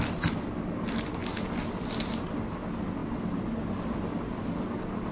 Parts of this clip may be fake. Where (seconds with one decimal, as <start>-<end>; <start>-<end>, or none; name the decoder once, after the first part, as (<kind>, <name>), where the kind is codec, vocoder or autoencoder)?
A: none